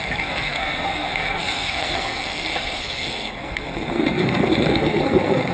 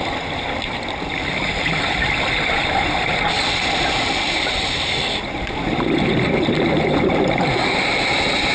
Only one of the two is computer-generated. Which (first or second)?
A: first